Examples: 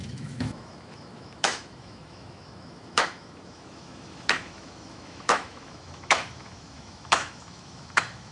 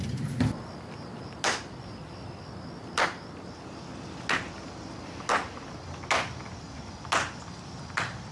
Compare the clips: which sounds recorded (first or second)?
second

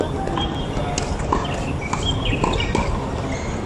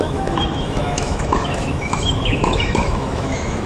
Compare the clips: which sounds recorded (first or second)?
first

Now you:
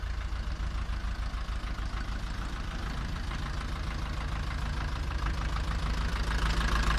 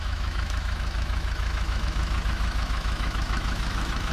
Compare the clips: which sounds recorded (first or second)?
first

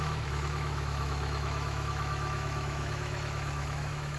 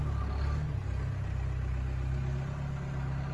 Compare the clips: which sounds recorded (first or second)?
second